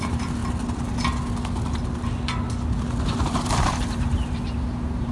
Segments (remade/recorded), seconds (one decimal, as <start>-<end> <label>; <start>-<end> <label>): 0.0-0.4 remade; 0.4-3.5 recorded; 3.5-5.1 remade